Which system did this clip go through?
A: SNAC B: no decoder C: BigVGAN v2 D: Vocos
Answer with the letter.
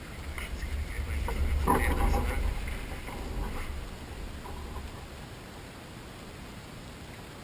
B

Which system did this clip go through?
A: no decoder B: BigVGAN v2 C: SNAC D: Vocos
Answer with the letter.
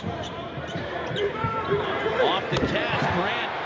B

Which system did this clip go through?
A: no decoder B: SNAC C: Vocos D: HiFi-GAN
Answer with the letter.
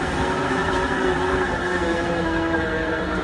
B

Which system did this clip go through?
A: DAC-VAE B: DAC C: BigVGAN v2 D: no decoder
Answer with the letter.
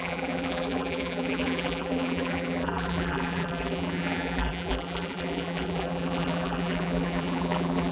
C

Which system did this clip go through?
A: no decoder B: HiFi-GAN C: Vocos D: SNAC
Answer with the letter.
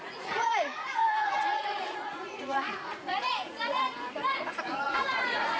C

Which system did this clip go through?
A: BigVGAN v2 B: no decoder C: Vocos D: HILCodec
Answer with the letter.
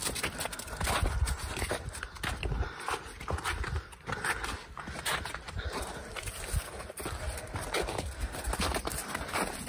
B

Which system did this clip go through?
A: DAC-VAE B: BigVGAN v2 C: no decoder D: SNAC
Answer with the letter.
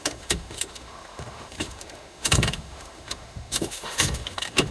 A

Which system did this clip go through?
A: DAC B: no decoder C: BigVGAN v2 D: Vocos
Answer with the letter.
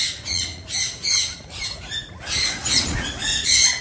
D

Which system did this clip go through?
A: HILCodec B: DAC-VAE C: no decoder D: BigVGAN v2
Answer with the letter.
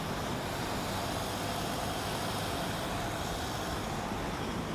C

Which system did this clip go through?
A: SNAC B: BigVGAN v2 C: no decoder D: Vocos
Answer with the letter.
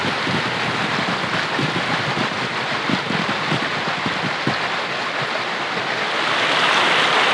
C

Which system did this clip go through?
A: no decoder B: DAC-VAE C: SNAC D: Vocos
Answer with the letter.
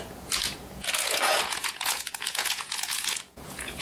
D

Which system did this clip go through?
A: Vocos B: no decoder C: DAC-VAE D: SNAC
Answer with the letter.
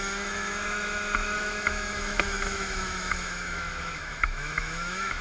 C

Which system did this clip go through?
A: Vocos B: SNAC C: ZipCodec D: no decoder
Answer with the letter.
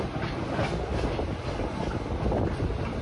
D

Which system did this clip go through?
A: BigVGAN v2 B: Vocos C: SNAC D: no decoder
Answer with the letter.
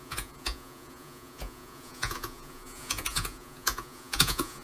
B